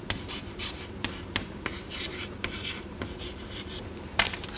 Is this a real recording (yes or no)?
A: no